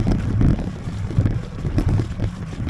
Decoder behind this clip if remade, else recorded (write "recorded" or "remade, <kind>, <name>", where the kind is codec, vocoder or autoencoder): recorded